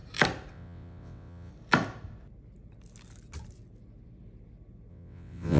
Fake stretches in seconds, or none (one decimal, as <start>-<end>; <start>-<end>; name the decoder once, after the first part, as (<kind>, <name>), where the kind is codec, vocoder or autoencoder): 0.5-1.5 (vocoder, WaveNeXt); 4.9-5.6